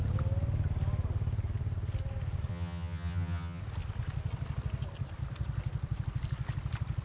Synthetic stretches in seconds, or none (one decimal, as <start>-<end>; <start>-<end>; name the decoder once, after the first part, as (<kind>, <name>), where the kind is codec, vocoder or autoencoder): 2.5-3.6 (vocoder, HiFi-GAN)